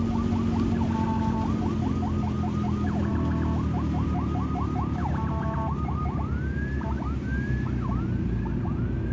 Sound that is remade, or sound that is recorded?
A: recorded